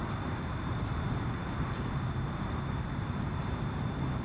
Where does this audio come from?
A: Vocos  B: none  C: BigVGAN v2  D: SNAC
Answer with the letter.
C